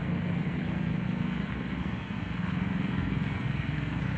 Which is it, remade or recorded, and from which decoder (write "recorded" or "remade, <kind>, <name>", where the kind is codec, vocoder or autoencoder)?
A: remade, codec, SNAC